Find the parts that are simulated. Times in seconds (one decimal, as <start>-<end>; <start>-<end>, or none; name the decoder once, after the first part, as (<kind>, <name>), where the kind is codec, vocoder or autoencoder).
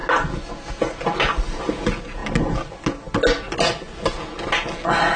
none